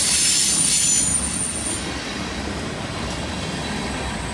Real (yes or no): yes